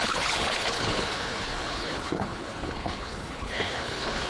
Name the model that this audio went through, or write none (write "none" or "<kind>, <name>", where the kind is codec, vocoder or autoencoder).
codec, HILCodec